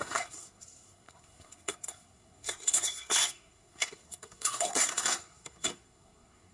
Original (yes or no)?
no